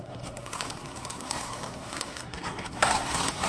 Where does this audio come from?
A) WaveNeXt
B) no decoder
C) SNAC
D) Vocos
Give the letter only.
C